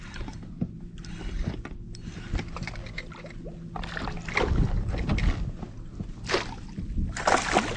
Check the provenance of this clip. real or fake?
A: real